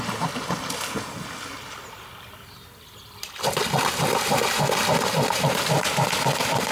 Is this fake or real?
real